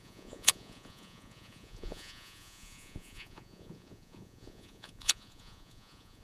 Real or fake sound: fake